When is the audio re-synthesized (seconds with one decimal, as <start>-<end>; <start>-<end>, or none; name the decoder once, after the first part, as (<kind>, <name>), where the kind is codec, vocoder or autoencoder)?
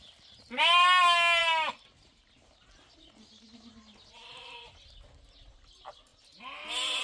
none